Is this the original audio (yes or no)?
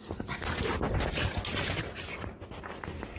yes